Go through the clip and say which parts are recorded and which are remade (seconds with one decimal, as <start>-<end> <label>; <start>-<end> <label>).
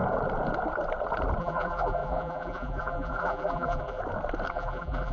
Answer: 0.0-1.4 recorded; 1.4-4.0 remade; 4.0-4.5 recorded; 4.5-5.1 remade